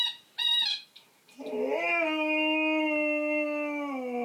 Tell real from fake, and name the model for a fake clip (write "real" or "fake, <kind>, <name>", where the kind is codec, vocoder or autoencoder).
real